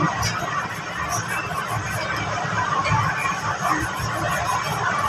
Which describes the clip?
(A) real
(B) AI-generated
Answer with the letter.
A